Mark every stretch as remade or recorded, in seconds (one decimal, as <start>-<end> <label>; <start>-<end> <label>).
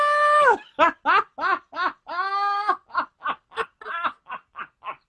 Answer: 0.0-5.1 recorded